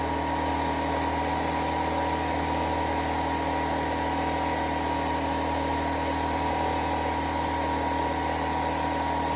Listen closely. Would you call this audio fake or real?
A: real